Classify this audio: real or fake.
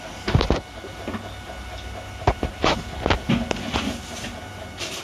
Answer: real